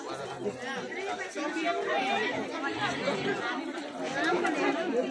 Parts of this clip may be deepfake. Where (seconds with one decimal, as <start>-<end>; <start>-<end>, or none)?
2.2-3.8